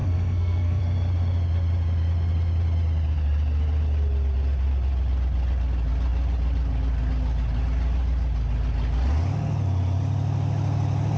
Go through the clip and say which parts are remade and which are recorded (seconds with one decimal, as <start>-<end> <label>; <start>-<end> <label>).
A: 0.0-0.8 remade; 0.8-11.2 recorded